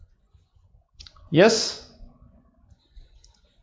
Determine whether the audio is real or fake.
fake